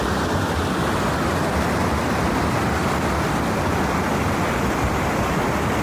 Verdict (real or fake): real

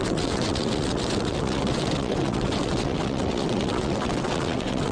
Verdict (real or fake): fake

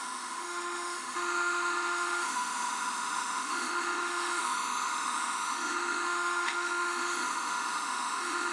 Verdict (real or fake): fake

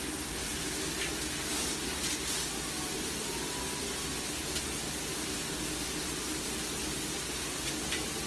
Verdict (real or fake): real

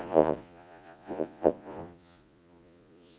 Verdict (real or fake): fake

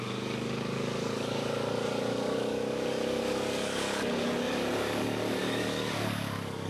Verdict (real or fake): fake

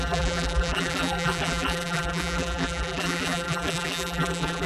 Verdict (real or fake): fake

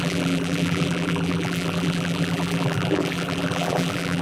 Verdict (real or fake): fake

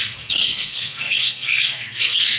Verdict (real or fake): fake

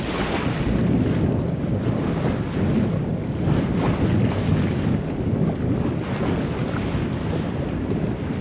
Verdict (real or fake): real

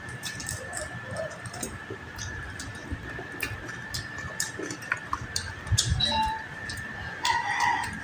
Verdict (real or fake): fake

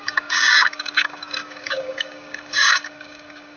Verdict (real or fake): fake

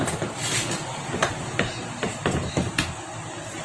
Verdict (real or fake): real